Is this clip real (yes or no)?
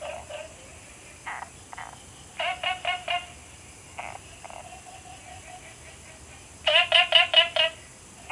yes